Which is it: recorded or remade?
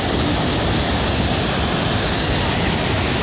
remade